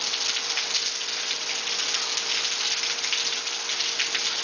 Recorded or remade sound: recorded